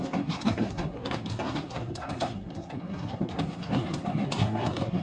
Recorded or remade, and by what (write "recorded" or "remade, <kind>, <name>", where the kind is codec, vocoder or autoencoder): remade, codec, SNAC